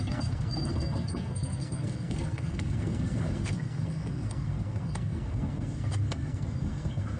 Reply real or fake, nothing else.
fake